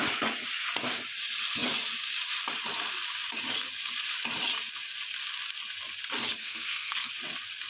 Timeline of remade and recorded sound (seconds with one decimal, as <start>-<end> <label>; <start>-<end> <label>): 0.0-6.4 recorded; 6.4-7.1 remade; 7.1-7.7 recorded